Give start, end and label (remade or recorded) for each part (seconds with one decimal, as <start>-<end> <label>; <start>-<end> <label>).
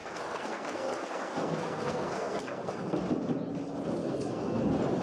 0.0-3.0 remade; 3.0-4.0 recorded; 4.0-4.6 remade; 4.6-5.0 recorded